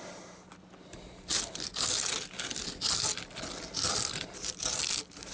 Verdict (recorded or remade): recorded